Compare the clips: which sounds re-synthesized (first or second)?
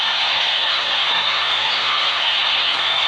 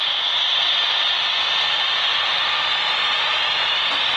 first